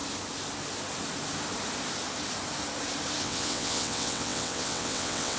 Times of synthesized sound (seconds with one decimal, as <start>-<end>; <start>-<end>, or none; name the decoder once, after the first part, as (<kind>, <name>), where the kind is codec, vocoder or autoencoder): 3.2-5.4 (vocoder, WaveNeXt)